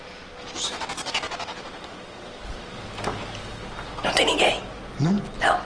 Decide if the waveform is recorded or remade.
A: recorded